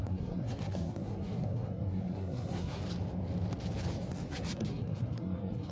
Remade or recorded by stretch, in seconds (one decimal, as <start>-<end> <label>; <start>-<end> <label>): 0.0-2.8 remade; 2.8-4.3 recorded; 4.3-5.7 remade